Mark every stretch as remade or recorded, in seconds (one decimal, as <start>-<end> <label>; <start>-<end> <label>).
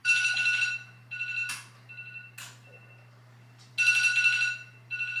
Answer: 0.0-0.6 remade; 0.6-5.2 recorded